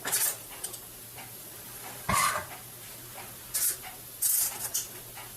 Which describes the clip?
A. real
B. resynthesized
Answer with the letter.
A